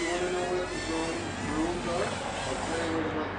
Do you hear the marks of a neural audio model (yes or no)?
no